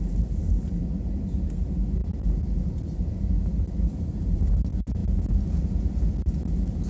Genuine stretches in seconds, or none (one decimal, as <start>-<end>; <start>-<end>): 0.0-6.9